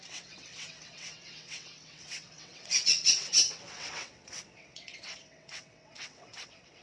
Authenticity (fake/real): fake